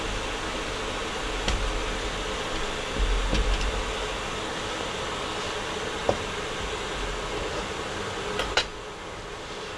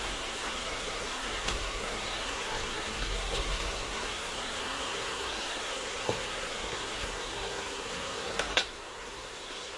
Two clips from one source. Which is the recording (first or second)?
first